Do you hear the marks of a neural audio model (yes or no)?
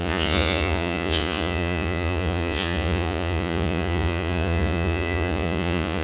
yes